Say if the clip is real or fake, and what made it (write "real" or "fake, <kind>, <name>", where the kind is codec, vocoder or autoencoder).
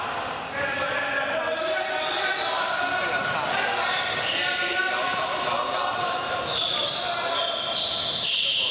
real